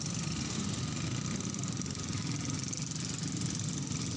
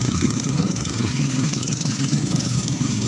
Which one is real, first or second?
first